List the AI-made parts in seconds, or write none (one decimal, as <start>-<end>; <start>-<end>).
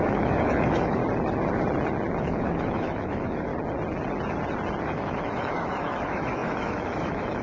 0.0-1.0; 2.2-3.5; 4.8-7.4